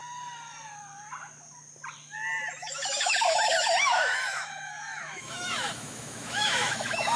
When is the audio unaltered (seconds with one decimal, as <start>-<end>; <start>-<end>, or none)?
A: 0.0-2.6